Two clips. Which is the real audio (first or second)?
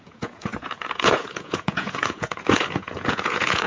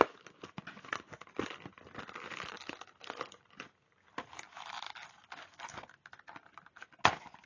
second